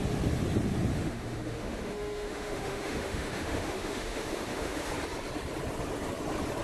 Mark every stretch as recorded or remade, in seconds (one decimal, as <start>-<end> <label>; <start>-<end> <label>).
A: 0.0-0.9 recorded; 0.9-4.9 remade; 4.9-6.6 recorded